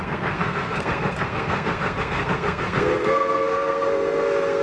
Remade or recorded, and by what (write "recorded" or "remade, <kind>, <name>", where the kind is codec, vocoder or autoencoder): remade, codec, SNAC